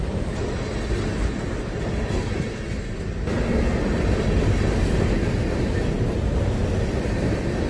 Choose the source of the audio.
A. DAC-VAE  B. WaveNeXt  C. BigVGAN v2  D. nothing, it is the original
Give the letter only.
D